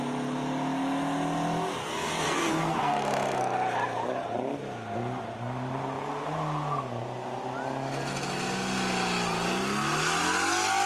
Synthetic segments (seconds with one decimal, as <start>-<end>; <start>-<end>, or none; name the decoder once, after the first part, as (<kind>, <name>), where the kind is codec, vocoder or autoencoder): 1.8-3.4 (codec, SNAC)

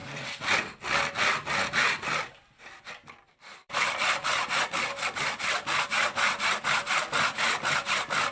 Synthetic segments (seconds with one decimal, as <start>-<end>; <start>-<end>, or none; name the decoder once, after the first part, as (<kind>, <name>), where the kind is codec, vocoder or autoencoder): 0.0-0.6 (vocoder, BigVGAN v2); 2.4-4.7

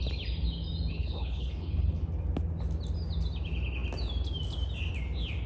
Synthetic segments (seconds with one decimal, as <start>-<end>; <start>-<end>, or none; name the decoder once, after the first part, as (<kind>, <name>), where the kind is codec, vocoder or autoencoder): 0.9-2.0 (codec, HILCodec)

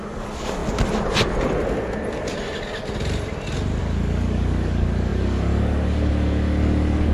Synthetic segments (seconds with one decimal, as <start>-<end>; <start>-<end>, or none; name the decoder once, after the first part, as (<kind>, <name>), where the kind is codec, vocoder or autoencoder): 0.0-0.6 (codec, DAC); 3.8-7.1

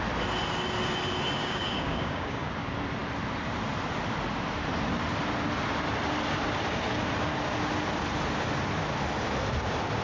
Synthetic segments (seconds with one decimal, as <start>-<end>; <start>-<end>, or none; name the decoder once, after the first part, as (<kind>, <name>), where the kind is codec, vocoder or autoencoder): 1.4-2.5 (codec, DAC)